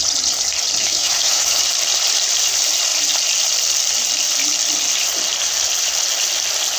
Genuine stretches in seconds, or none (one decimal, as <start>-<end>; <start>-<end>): 0.0-0.8; 1.6-6.8